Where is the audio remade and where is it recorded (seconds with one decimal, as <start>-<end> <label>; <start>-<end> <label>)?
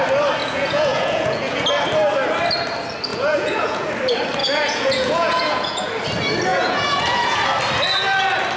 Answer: 0.0-0.4 recorded; 0.4-1.6 remade; 1.6-3.1 recorded; 3.1-3.9 remade; 3.9-4.4 recorded; 4.4-5.9 remade; 5.9-6.5 recorded; 6.5-7.4 remade; 7.4-8.6 recorded